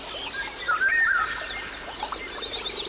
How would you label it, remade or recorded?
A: recorded